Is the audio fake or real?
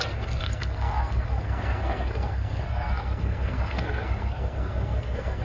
fake